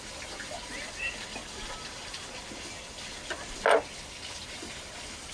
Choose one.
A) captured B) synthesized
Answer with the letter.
A